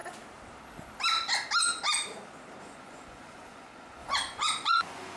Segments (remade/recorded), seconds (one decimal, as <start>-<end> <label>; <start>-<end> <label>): 0.0-2.6 recorded; 2.6-5.2 remade